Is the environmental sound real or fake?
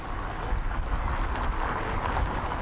real